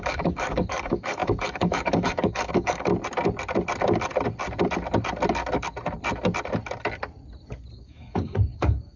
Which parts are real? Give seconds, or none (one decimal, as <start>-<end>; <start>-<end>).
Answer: 2.9-7.7